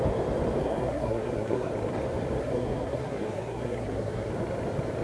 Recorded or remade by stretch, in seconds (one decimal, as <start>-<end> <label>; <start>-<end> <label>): 0.0-0.6 recorded; 0.6-1.7 remade; 1.7-2.4 recorded; 2.4-4.3 remade; 4.3-5.0 recorded